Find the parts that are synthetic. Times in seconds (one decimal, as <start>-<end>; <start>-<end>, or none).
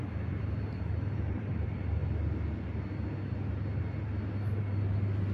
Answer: 0.0-2.0; 3.8-5.3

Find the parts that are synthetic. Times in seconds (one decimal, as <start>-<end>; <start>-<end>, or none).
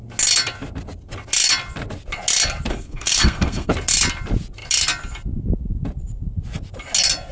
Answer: 2.7-3.7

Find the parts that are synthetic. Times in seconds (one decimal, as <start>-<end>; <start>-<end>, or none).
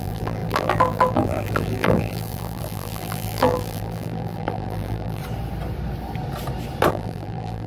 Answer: 0.0-5.2; 6.9-7.7